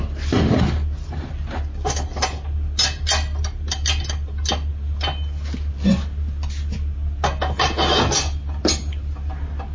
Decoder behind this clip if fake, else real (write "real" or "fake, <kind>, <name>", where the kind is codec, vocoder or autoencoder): real